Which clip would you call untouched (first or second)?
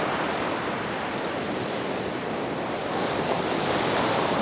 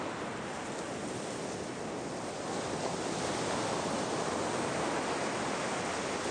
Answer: second